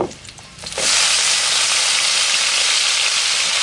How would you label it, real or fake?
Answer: fake